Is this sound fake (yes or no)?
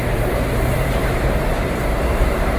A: yes